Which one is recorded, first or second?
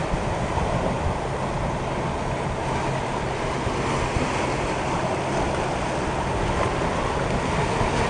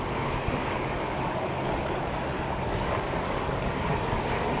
first